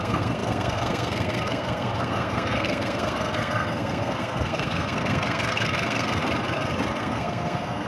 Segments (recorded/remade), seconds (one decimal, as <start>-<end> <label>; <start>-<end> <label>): 0.0-6.2 remade; 6.2-7.0 recorded; 7.0-7.9 remade